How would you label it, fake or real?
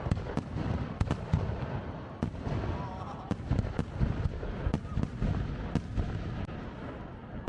real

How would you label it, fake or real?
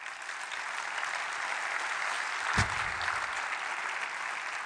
real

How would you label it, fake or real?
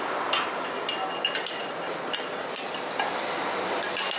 real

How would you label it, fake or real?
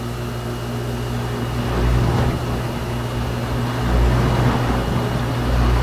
real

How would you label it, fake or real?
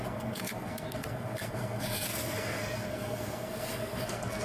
fake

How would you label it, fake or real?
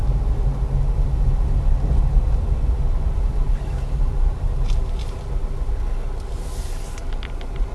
real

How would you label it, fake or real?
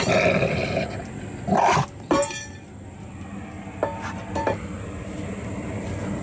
real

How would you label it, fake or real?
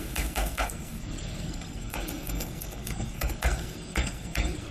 fake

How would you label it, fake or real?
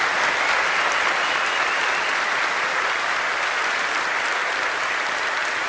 real